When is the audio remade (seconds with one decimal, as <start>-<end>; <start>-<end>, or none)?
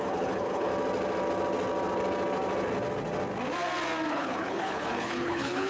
0.0-0.7; 4.1-5.7